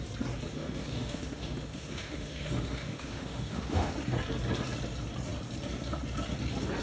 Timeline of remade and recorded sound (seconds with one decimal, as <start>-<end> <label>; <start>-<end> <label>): 0.0-0.5 recorded; 0.5-3.9 remade; 3.9-6.8 recorded